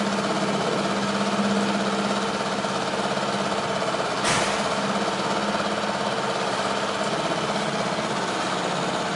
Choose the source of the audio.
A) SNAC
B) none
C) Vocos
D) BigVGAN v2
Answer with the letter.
B